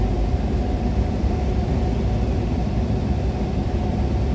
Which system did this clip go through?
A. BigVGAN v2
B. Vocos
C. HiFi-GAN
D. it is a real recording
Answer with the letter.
A